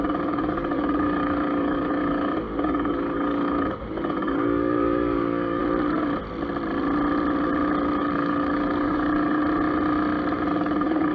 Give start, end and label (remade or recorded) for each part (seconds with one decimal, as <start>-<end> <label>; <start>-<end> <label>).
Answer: 0.0-5.6 remade; 5.6-8.0 recorded; 8.0-9.4 remade; 9.4-10.5 recorded; 10.5-11.1 remade